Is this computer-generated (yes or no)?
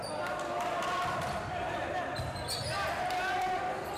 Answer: no